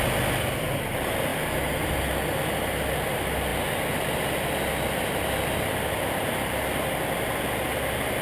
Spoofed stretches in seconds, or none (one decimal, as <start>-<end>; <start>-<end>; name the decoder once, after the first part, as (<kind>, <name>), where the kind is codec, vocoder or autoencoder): none